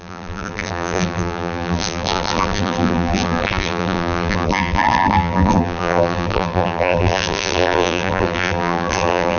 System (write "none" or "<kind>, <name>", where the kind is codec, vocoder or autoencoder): vocoder, BigVGAN v2